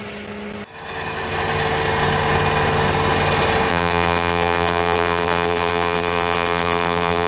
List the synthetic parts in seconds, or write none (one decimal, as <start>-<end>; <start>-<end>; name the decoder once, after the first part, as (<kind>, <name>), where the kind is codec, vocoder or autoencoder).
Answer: 3.7-7.3 (vocoder, BigVGAN v2)